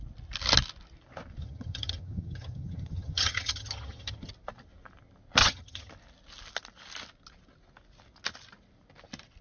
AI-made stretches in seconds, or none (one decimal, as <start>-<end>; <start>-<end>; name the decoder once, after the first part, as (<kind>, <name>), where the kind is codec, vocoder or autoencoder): 1.4-4.3 (vocoder, HiFi-GAN); 5.4-5.9